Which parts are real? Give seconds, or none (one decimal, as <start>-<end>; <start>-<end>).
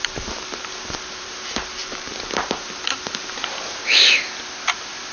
0.7-1.8; 3.3-5.1